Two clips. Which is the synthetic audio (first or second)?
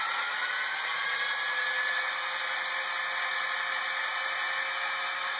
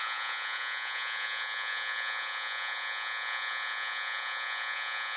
second